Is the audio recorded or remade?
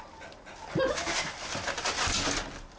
recorded